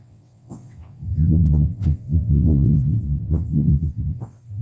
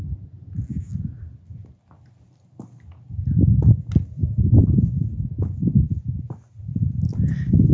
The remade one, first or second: first